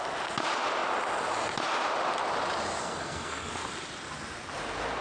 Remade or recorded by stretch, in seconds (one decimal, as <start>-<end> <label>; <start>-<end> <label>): 0.0-2.8 recorded; 2.8-3.5 remade; 3.5-5.0 recorded